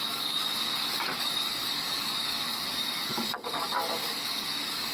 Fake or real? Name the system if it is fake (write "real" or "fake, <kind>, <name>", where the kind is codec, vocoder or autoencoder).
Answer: fake, codec, DAC